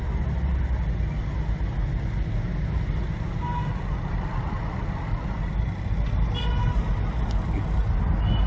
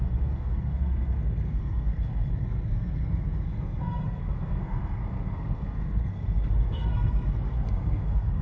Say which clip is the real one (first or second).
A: first